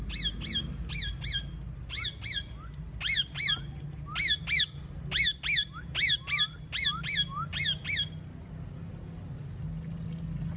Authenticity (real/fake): real